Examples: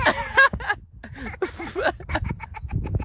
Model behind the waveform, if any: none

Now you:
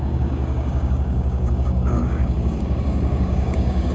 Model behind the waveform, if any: codec, DAC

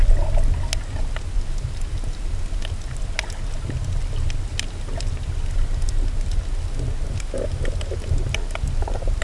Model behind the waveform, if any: none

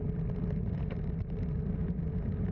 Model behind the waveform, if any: none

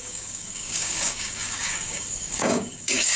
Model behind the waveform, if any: codec, DAC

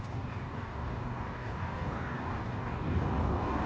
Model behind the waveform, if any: codec, DAC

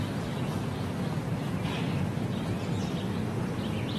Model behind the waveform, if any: none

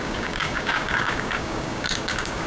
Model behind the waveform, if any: codec, DAC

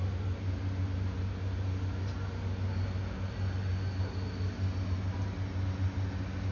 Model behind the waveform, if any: none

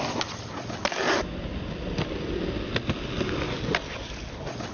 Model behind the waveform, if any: none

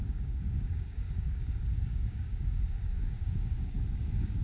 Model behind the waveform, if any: codec, DAC